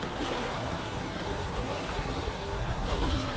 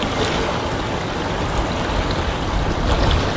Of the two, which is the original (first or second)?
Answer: second